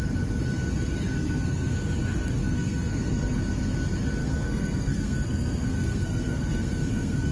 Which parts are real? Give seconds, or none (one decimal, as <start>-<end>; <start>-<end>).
0.0-1.1; 1.7-2.4; 3.4-4.2